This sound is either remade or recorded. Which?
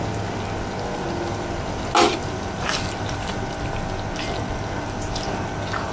recorded